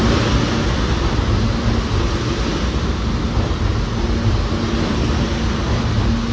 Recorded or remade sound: recorded